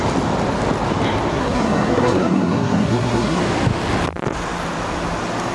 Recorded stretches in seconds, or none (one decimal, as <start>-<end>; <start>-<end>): 0.0-1.3; 3.4-5.5